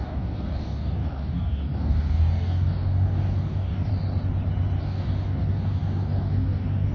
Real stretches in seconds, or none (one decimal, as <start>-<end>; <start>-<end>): 3.9-4.8